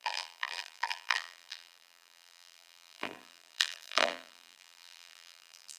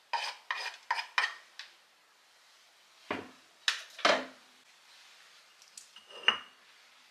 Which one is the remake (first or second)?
first